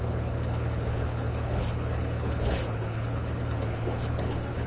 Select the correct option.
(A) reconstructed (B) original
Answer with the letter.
A